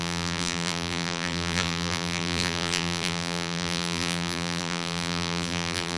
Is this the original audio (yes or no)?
no